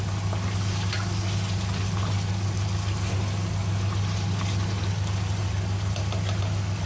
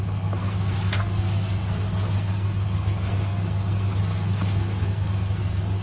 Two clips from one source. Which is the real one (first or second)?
first